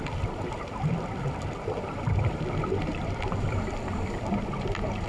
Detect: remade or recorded remade